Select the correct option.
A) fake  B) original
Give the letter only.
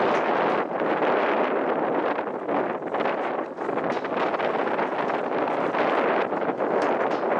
B